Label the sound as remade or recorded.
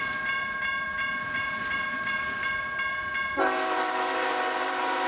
remade